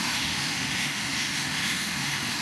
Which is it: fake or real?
fake